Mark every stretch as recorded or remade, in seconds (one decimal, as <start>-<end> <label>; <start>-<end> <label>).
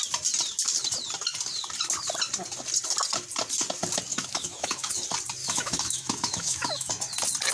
0.0-4.1 recorded; 4.1-4.9 remade; 4.9-5.4 recorded; 5.4-6.9 remade; 6.9-7.5 recorded